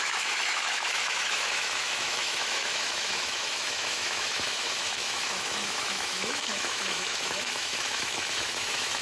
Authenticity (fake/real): fake